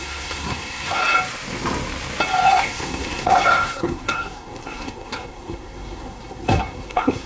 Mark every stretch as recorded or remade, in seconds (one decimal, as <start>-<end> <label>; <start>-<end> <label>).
0.0-1.0 remade; 1.0-2.5 recorded; 2.5-7.3 remade